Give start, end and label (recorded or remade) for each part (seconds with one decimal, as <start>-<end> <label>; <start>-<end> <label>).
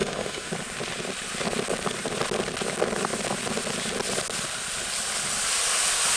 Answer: 0.0-0.5 remade; 0.5-6.2 recorded